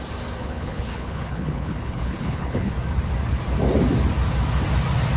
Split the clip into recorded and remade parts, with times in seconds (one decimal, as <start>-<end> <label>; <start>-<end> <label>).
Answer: 0.0-0.4 recorded; 0.4-2.7 remade; 2.7-5.2 recorded